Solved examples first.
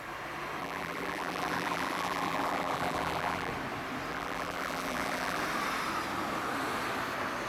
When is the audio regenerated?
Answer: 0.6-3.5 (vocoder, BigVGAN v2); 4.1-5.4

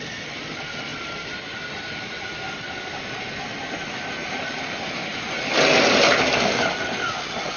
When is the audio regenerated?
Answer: 4.2-4.7 (vocoder, BigVGAN v2)

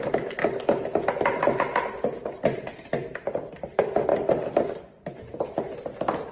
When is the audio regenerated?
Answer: 0.0-0.4 (vocoder, BigVGAN v2); 3.5-6.3

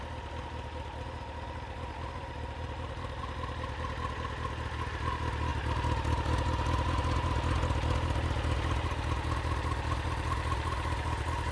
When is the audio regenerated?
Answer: 2.2-3.2 (vocoder, BigVGAN v2)

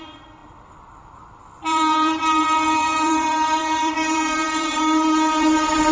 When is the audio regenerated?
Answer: 0.0-5.9 (vocoder, BigVGAN v2)

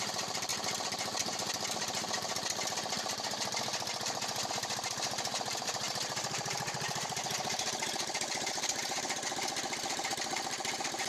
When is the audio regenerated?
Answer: 0.0-0.5 (vocoder, BigVGAN v2); 4.5-11.1

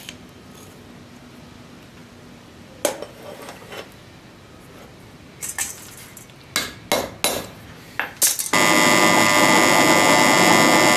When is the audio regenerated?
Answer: none